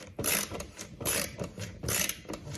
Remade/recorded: remade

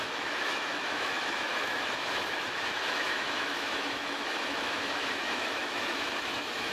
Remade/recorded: remade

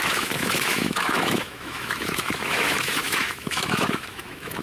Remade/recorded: remade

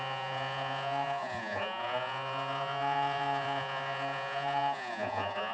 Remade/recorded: remade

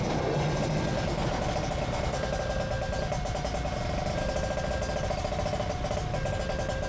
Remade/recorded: recorded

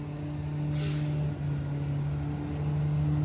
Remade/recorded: recorded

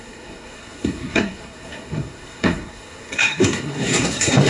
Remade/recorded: remade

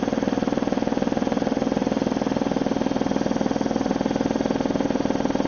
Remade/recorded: recorded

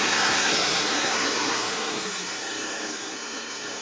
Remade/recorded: remade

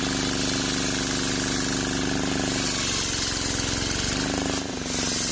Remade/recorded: recorded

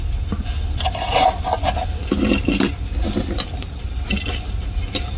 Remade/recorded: recorded